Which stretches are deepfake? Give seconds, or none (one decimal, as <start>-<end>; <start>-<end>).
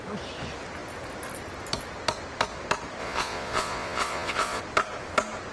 3.0-4.6